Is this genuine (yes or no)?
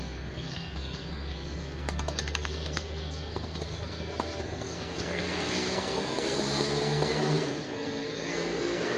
no